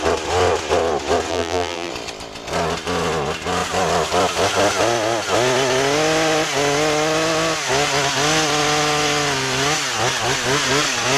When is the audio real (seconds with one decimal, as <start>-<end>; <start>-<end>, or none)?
0.0-1.3; 1.9-11.2

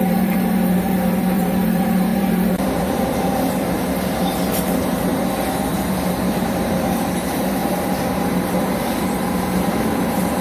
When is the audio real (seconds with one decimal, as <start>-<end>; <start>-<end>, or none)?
5.1-5.7